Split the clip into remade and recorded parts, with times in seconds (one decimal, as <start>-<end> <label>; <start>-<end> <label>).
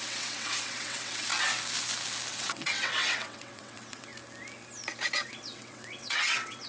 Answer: 0.0-1.3 remade; 1.3-2.3 recorded; 2.3-4.1 remade; 4.1-5.1 recorded; 5.1-6.7 remade